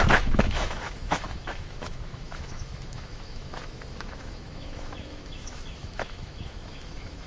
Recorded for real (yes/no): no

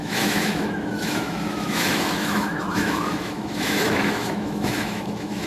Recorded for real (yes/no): no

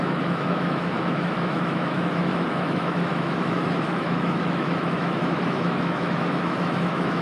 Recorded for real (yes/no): no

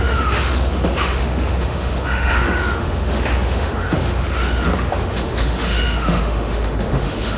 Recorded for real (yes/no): no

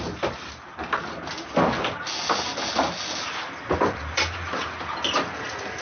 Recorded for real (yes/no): yes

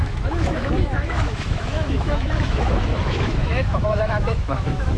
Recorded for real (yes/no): no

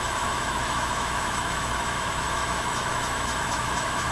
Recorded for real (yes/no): no